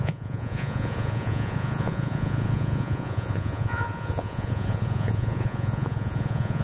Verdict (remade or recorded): remade